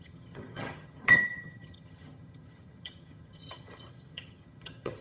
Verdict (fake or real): fake